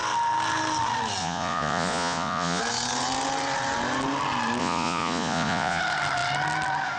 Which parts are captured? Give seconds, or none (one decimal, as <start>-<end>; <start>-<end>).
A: 0.0-1.2; 2.6-4.6; 5.8-7.0